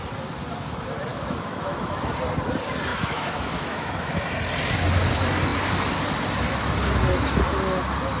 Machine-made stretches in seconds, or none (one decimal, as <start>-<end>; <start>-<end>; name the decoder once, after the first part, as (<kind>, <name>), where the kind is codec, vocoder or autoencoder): 1.1-2.1 (autoencoder, DAC-VAE); 2.9-4.2